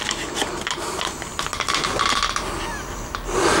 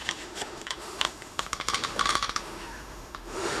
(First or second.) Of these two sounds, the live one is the first